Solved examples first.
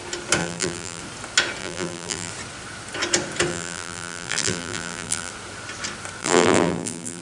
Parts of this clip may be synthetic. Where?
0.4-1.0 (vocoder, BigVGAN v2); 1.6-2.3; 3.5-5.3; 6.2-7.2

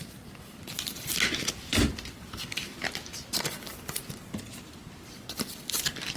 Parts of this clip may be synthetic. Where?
0.0-6.2 (vocoder, BigVGAN v2)

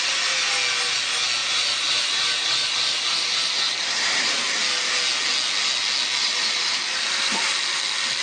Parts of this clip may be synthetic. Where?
1.4-4.3 (vocoder, BigVGAN v2); 6.2-7.4

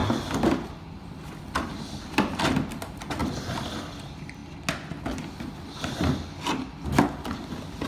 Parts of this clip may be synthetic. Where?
none

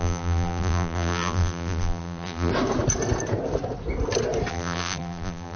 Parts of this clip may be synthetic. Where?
0.0-2.5 (vocoder, BigVGAN v2); 4.5-5.6